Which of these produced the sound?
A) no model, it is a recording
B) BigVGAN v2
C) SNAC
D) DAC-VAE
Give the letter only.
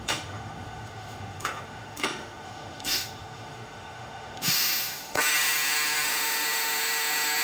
D